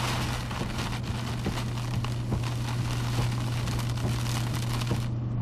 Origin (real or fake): real